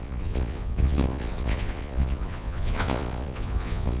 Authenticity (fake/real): fake